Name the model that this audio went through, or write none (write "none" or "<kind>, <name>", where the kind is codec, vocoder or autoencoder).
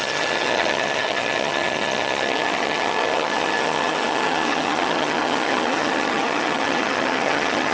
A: vocoder, HiFi-GAN